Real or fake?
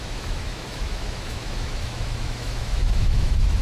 fake